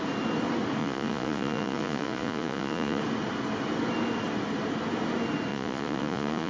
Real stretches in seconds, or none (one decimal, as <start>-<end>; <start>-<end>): 0.0-0.8; 3.0-5.5